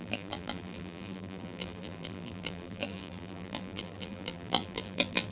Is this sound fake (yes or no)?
yes